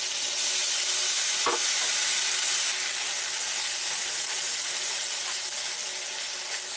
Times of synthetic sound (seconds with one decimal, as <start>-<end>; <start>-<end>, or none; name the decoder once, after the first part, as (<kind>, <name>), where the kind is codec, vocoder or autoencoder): 3.9-5.0 (vocoder, Vocos)